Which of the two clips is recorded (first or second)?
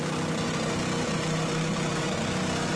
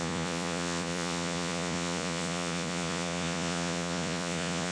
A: first